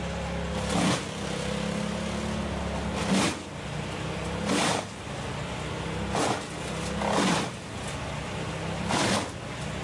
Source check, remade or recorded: recorded